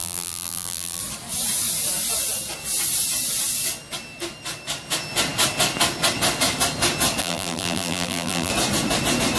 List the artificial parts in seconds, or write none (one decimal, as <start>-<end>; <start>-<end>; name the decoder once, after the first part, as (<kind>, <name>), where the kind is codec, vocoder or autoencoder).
0.0-1.0 (vocoder, BigVGAN v2); 7.2-8.5

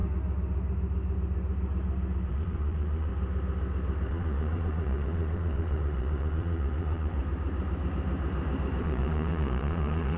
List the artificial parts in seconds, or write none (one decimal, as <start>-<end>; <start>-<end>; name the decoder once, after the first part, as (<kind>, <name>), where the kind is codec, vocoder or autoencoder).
2.3-3.1 (vocoder, Vocos); 4.1-7.2; 8.8-10.2